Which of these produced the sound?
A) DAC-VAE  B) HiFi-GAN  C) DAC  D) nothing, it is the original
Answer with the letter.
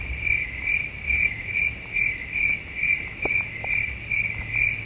D